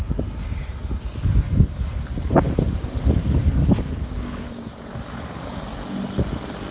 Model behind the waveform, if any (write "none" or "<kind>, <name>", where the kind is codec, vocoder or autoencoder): none